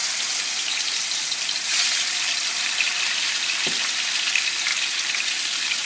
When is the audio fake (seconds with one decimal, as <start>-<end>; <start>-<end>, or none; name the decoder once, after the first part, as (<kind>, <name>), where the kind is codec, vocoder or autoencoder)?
0.0-5.8 (vocoder, BigVGAN v2)